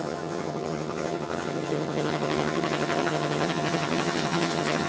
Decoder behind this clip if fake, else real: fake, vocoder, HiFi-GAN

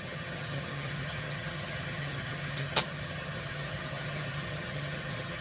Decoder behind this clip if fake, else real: fake, vocoder, HiFi-GAN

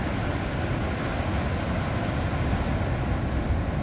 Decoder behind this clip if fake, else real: real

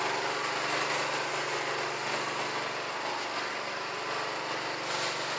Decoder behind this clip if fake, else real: real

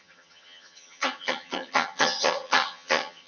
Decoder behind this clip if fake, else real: fake, vocoder, HiFi-GAN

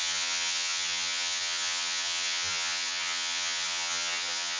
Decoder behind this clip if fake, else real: fake, vocoder, HiFi-GAN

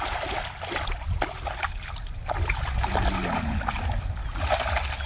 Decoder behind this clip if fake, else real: real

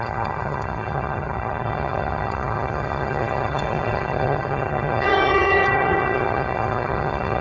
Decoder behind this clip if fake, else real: fake, vocoder, HiFi-GAN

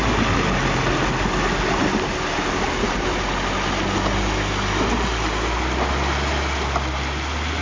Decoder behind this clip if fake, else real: real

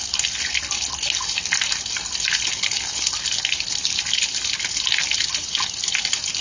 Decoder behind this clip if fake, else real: real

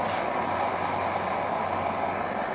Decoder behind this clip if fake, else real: real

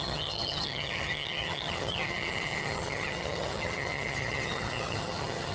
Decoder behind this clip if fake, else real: fake, vocoder, HiFi-GAN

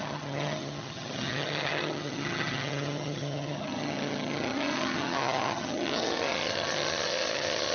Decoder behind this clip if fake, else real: fake, vocoder, HiFi-GAN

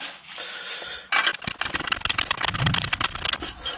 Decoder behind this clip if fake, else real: real